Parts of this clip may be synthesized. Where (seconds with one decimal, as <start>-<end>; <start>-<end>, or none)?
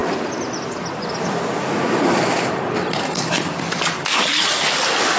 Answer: none